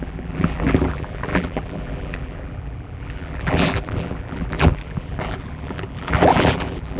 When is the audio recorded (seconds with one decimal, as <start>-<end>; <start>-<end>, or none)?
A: none

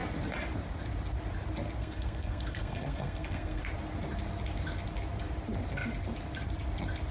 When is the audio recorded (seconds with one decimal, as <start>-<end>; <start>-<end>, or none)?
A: 0.0-1.8; 3.6-7.1

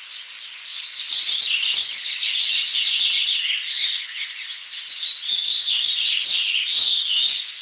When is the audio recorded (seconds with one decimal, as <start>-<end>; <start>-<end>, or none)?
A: 0.0-0.7; 1.4-4.5; 7.0-7.6

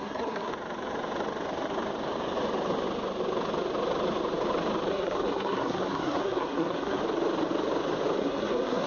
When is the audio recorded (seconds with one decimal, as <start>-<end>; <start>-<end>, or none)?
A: 0.5-4.9; 7.0-8.2

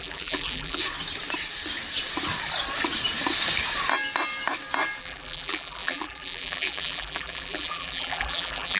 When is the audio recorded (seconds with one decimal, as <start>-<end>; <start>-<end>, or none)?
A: 0.8-5.0

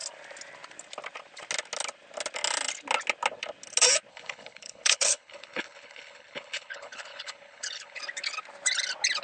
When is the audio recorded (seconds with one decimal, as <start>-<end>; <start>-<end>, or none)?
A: 0.0-4.1; 8.0-9.2

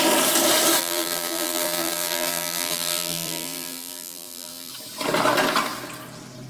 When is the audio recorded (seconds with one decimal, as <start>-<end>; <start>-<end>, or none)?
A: 0.0-0.8; 4.7-6.5

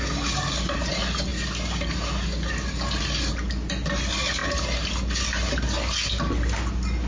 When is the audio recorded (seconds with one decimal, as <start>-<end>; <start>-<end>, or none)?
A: 0.0-7.1